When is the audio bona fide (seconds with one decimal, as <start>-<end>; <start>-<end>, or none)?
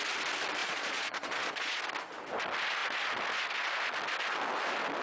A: 0.0-0.6; 1.8-5.0